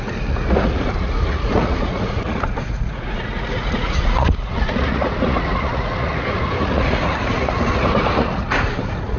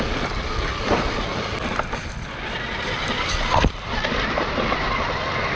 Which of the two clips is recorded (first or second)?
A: second